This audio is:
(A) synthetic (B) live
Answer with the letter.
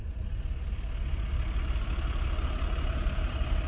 B